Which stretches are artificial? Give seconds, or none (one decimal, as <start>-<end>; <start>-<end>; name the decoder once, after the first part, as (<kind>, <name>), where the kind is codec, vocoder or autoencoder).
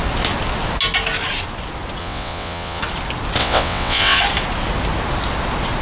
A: 2.0-2.8 (vocoder, WaveNeXt); 3.4-4.2